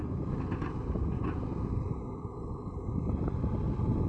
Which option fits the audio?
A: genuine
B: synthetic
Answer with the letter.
A